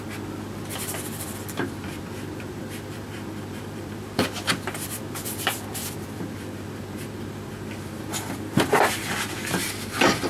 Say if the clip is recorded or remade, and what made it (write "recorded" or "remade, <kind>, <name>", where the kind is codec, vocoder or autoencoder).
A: remade, vocoder, BigVGAN v2